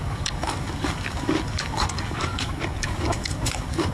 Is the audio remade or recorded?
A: remade